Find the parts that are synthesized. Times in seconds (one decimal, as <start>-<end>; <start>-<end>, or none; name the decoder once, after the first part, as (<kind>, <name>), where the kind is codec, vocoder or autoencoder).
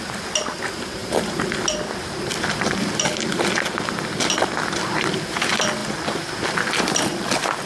1.0-3.1 (vocoder, BigVGAN v2); 5.8-7.7